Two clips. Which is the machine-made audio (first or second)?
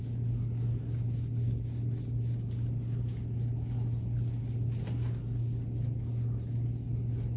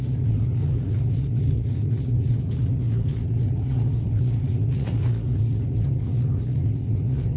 second